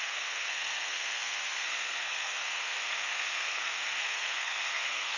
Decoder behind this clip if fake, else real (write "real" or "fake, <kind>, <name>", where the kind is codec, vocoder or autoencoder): fake, codec, SNAC